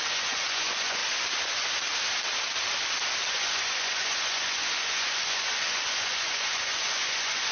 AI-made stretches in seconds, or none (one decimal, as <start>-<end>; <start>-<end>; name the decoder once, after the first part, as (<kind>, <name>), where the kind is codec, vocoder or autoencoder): 0.0-1.0 (vocoder, Vocos); 3.3-7.5